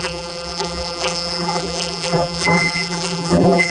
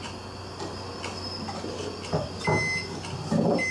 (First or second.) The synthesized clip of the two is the first